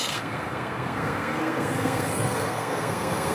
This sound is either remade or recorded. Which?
remade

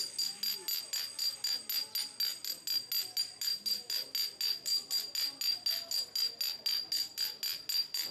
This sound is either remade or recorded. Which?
recorded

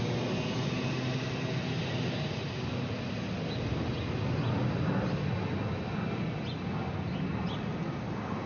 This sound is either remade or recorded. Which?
recorded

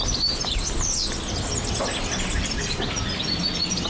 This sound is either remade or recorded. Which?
recorded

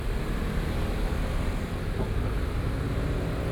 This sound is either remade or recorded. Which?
recorded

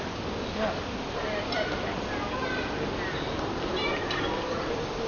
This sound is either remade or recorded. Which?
recorded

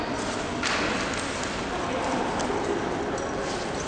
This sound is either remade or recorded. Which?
recorded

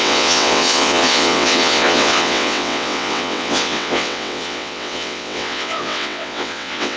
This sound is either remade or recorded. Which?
remade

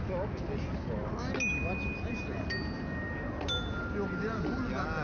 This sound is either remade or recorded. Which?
recorded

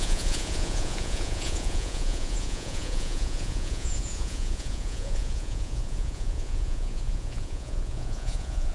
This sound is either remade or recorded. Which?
remade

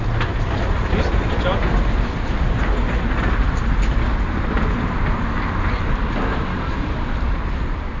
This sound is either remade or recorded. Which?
recorded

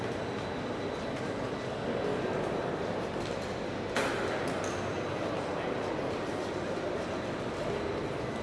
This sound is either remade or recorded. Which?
recorded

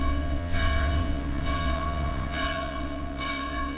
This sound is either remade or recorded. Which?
remade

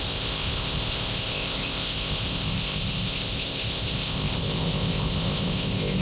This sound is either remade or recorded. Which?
remade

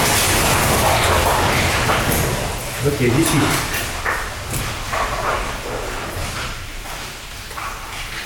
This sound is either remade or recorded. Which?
recorded